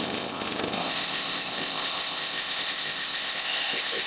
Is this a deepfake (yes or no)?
yes